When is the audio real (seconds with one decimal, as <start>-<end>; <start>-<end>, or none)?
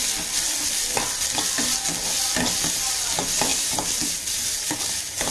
0.0-3.5